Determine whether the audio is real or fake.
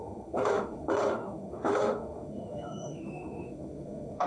fake